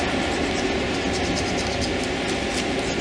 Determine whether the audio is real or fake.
real